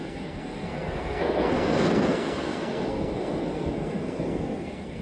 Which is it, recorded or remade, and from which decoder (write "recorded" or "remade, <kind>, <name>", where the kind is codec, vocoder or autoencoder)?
remade, codec, SNAC